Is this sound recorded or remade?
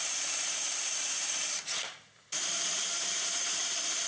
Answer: remade